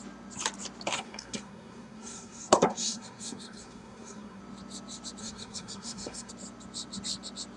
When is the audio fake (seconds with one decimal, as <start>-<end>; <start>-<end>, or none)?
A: 0.9-4.4; 5.2-6.3